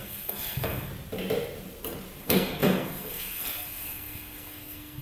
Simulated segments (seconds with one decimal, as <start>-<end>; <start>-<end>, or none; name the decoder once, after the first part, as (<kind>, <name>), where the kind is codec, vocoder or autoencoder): 0.0-0.9 (codec, SNAC); 2.2-5.0